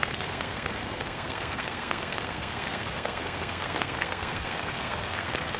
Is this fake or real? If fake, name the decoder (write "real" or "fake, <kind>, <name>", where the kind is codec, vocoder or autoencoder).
fake, codec, SNAC